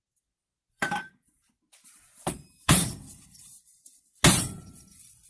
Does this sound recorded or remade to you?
remade